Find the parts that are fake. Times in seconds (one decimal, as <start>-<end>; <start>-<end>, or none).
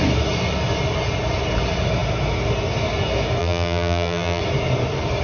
3.4-4.4